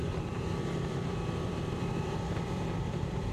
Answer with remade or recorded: remade